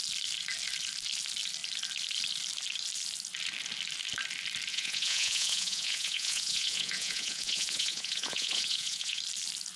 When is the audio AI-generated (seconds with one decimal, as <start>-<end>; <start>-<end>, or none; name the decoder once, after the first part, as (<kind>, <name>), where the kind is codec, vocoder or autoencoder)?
4.7-9.2 (vocoder, Vocos)